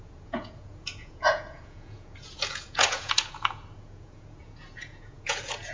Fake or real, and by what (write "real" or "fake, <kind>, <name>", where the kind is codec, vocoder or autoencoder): fake, vocoder, Vocos